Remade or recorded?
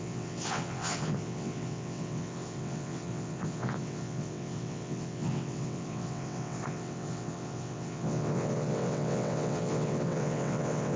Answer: remade